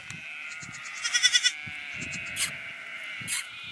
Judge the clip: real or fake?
real